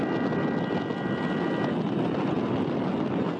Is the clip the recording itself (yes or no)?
yes